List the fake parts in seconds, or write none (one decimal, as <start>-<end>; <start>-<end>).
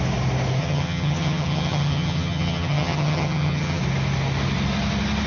0.6-3.8